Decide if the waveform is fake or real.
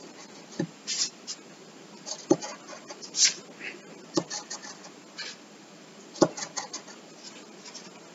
real